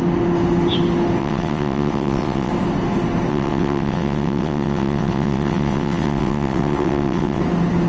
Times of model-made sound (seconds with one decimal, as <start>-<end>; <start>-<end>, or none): 1.2-2.5; 3.3-7.4